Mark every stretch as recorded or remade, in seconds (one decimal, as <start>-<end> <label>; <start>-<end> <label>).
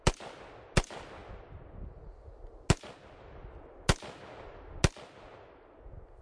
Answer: 0.0-6.2 recorded